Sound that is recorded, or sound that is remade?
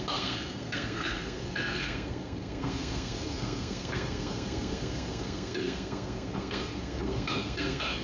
remade